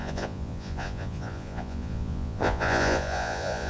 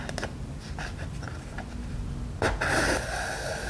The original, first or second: second